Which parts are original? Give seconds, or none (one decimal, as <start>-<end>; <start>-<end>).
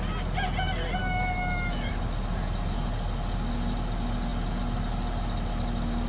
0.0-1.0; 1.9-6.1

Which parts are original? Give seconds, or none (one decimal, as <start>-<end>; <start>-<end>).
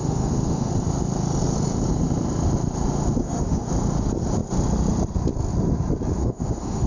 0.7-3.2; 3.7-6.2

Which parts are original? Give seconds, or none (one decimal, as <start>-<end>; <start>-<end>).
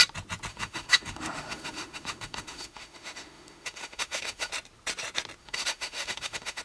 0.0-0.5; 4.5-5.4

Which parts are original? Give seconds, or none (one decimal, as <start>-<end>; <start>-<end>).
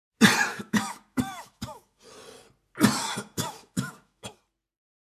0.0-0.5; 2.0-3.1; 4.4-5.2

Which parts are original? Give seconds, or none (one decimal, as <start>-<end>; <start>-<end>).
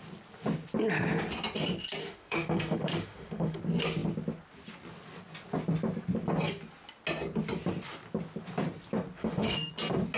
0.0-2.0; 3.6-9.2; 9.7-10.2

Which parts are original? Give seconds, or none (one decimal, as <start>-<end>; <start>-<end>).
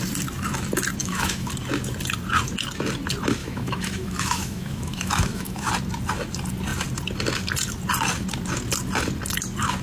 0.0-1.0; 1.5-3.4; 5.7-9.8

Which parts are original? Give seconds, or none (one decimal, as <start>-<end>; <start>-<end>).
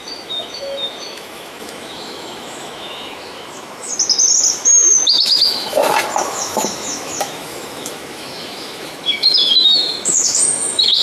3.9-4.5; 5.7-6.2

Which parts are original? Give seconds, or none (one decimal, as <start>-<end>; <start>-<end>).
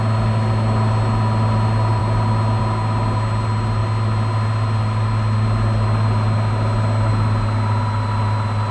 0.0-8.7